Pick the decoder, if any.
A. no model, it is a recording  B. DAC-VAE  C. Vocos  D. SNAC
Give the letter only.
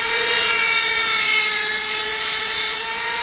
C